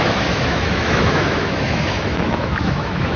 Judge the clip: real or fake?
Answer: fake